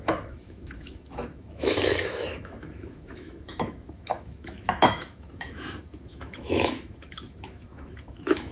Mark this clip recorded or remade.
remade